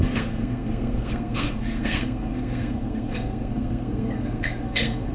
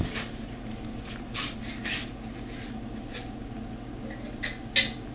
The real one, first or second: second